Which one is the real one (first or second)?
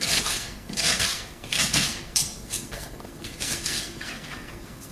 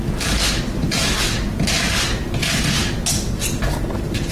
second